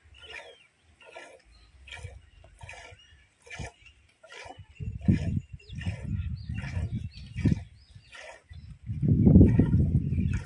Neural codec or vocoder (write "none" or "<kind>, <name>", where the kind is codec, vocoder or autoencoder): none